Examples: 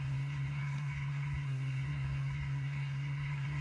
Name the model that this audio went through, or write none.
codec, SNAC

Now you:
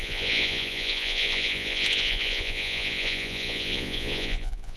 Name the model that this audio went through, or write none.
vocoder, Vocos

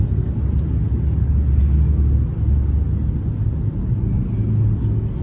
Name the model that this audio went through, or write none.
none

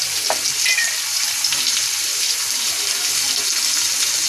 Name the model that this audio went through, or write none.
none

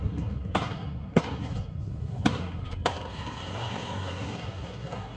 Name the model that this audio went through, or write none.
codec, SNAC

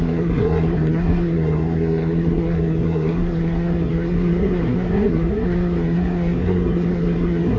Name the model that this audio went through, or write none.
codec, SNAC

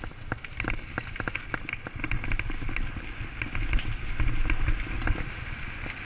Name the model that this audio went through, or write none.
none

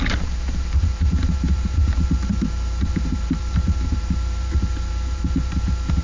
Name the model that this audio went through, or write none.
vocoder, BigVGAN v2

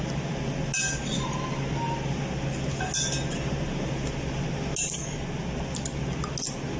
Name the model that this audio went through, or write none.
none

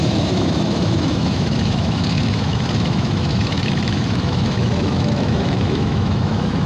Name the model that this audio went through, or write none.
autoencoder, DAC-VAE